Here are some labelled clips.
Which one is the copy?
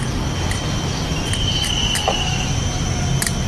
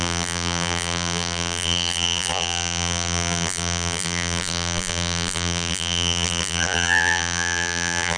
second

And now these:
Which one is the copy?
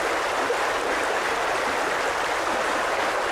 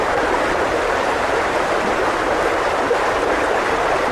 second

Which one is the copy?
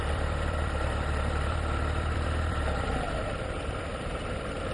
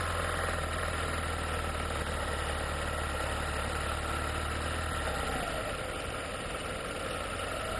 first